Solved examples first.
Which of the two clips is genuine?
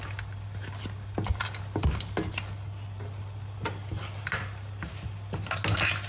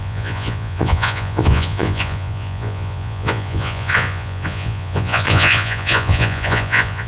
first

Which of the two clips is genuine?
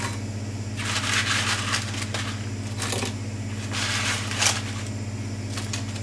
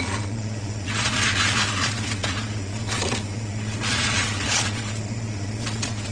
first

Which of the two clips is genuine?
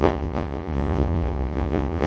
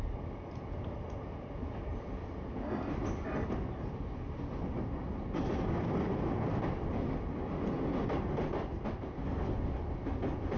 second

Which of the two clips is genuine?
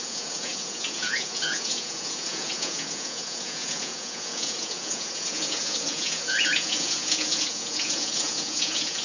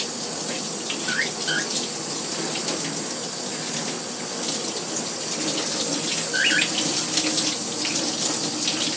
second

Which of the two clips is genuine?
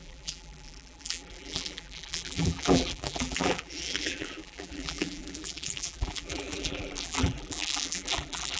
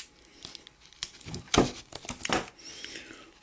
second